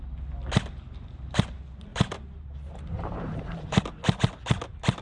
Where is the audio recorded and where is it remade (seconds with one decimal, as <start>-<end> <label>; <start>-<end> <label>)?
0.0-1.9 recorded; 1.9-3.8 remade; 3.8-5.0 recorded